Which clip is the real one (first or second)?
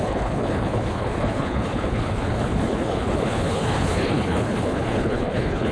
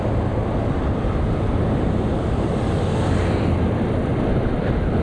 second